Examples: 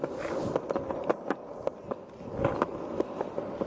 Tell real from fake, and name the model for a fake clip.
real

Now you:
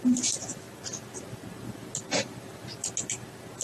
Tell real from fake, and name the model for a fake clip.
real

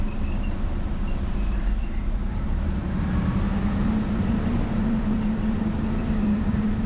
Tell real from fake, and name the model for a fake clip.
fake, vocoder, BigVGAN v2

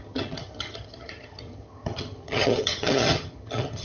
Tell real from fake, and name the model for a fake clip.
fake, vocoder, HiFi-GAN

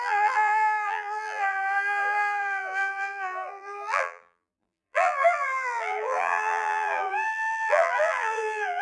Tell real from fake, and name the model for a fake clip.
fake, vocoder, BigVGAN v2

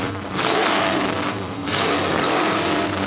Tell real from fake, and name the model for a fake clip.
fake, codec, SNAC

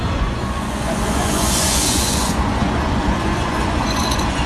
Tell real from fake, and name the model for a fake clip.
fake, vocoder, Vocos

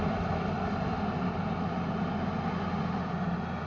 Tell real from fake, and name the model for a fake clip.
real